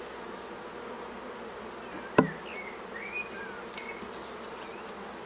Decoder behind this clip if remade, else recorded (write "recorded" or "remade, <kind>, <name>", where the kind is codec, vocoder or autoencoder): recorded